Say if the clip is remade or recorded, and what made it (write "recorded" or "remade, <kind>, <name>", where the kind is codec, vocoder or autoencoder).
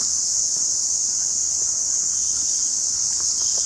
remade, codec, HILCodec